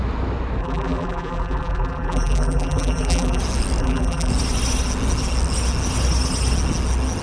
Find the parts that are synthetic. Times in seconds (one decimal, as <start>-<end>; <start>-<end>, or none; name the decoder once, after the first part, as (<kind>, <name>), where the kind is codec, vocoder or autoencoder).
0.6-3.4 (vocoder, BigVGAN v2); 3.8-4.3